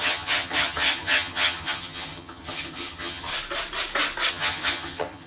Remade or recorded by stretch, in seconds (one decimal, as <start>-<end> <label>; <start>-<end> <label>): 0.0-3.3 remade; 3.3-4.3 recorded; 4.3-5.3 remade